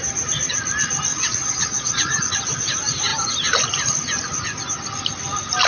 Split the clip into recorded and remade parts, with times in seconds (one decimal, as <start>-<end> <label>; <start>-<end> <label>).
0.0-1.1 recorded; 1.1-2.3 remade; 2.3-5.7 recorded